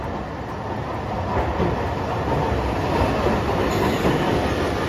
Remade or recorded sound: recorded